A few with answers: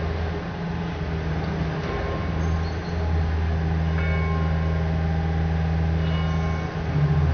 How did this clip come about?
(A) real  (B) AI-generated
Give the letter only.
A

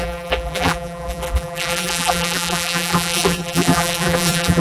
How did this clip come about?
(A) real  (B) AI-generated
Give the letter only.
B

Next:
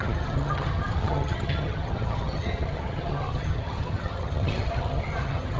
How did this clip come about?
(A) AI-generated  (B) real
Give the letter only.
A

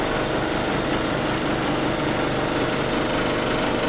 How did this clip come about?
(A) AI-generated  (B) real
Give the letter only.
B